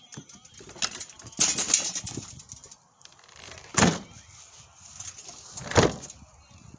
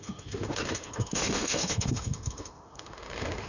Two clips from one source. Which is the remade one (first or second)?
second